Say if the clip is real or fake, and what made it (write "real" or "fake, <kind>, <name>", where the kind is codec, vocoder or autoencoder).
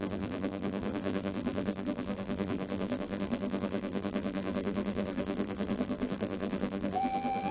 fake, vocoder, BigVGAN v2